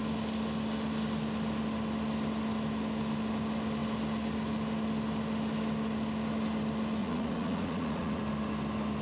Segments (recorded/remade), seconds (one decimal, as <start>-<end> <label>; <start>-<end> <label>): 0.0-7.0 recorded; 7.0-8.2 remade; 8.2-9.0 recorded